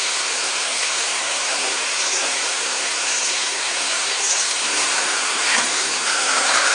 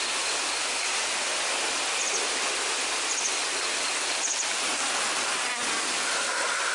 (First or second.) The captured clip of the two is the second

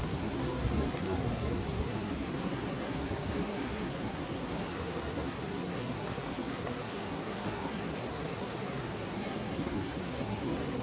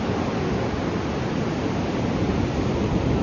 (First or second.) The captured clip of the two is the second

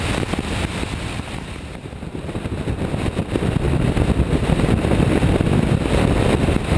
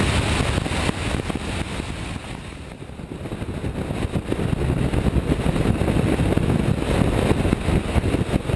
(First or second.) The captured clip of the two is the second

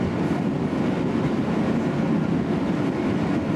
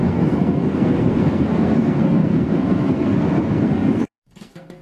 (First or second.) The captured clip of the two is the first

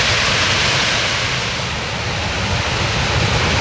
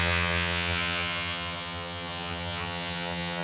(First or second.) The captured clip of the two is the first